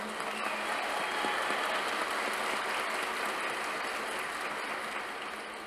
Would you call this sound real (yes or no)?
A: yes